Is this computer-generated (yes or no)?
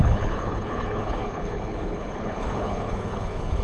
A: yes